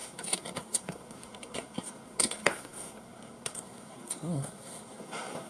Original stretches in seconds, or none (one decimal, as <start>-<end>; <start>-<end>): none